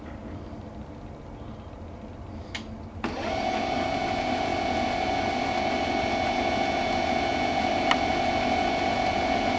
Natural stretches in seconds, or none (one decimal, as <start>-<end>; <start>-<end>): 0.0-9.6